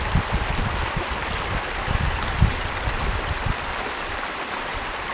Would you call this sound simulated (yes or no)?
yes